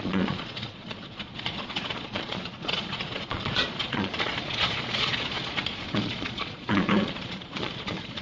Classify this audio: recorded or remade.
remade